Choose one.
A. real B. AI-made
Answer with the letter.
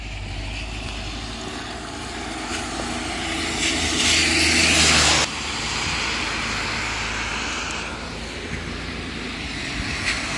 A